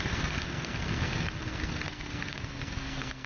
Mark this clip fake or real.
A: fake